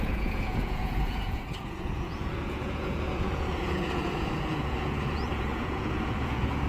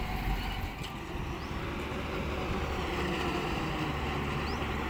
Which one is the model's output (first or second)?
first